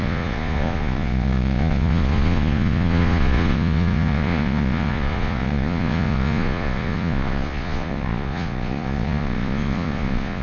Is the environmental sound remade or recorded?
remade